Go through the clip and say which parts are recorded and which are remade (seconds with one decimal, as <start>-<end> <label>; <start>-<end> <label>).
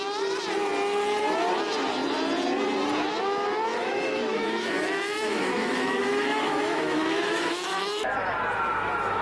0.0-3.7 recorded; 3.7-8.1 remade; 8.1-9.2 recorded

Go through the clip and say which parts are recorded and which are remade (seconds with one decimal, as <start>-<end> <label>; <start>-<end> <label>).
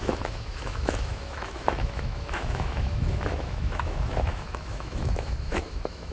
0.0-6.1 remade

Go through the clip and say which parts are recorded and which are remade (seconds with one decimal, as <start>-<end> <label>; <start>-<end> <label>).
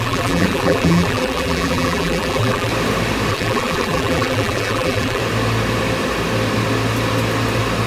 0.0-2.7 remade; 2.7-3.3 recorded; 3.3-5.2 remade; 5.2-7.9 recorded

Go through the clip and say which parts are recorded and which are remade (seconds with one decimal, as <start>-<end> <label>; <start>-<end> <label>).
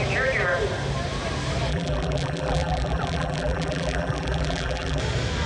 0.0-1.7 recorded; 1.7-5.0 remade; 5.0-5.5 recorded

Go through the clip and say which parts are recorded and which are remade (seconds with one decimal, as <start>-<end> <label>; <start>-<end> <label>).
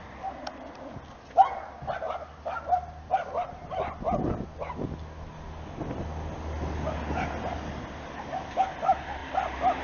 0.0-9.8 recorded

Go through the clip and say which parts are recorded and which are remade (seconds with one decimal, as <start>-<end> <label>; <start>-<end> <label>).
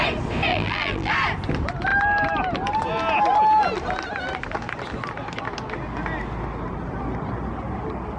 0.0-0.5 recorded; 0.5-1.1 remade; 1.1-8.2 recorded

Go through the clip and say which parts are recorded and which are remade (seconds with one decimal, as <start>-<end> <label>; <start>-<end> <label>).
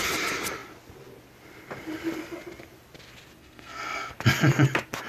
0.0-3.4 recorded; 3.4-4.1 remade; 4.1-5.1 recorded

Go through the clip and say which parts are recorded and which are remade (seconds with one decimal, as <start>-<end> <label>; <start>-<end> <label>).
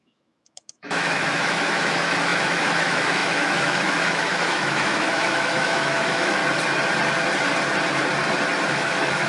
0.0-6.4 remade; 6.4-8.7 recorded; 8.7-9.3 remade